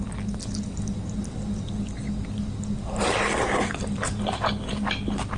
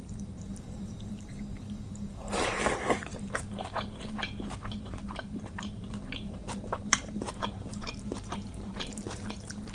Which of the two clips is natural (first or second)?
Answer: first